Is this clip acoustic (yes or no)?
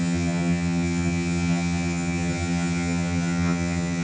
no